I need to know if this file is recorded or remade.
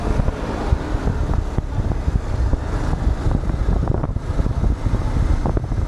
recorded